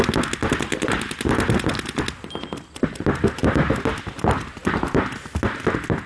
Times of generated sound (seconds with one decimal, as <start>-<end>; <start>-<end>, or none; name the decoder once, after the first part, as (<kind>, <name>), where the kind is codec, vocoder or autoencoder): none